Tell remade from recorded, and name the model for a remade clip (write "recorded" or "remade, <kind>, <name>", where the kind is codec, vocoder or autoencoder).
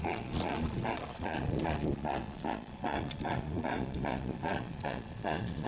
remade, vocoder, Vocos